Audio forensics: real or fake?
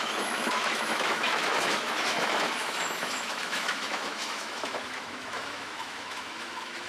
fake